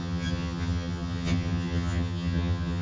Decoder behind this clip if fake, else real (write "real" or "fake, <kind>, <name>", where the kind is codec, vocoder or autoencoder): fake, vocoder, HiFi-GAN